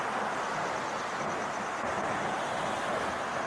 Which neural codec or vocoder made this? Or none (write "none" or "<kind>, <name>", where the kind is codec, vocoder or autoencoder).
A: none